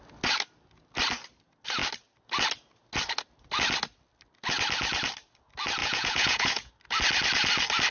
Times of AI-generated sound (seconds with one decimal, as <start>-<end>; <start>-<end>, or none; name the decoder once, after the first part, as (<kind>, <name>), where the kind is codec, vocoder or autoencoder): 5.8-6.7 (vocoder, Vocos)